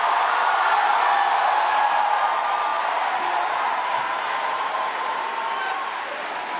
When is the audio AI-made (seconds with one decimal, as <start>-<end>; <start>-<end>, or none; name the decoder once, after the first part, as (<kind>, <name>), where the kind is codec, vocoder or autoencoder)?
4.1-5.5 (vocoder, BigVGAN v2)